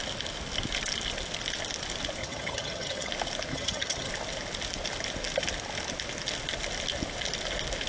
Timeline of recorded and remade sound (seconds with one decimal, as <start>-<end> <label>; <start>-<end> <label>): 0.0-2.2 recorded; 2.2-3.1 remade; 3.1-3.5 recorded; 3.5-4.1 remade; 4.1-7.9 recorded